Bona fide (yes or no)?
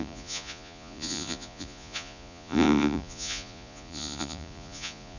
no